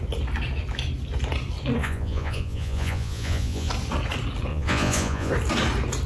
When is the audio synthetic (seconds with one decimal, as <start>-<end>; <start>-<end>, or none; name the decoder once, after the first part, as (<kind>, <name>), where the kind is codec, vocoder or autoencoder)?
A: 1.8-3.7 (vocoder, Vocos); 4.5-5.3